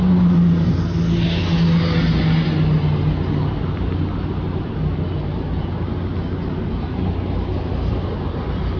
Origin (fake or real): real